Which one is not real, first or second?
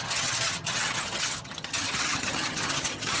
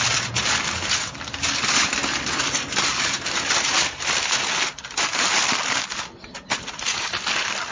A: first